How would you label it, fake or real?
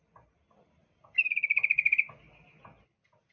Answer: real